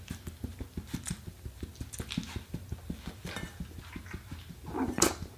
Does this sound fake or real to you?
real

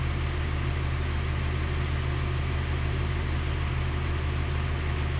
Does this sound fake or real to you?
real